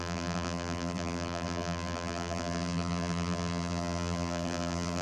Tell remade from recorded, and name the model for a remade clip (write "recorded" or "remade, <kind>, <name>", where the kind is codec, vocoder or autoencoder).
remade, vocoder, BigVGAN v2